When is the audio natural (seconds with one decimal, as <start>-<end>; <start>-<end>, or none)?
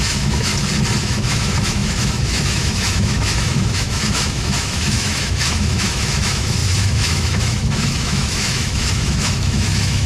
0.5-1.0